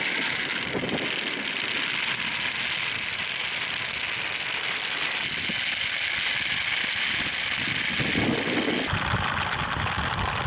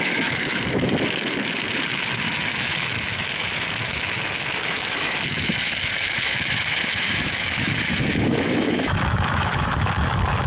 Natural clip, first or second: first